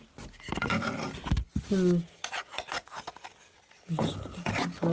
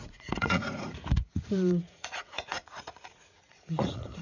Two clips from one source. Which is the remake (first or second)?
second